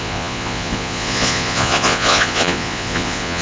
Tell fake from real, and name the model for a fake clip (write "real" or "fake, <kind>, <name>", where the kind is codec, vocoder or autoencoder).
fake, vocoder, Vocos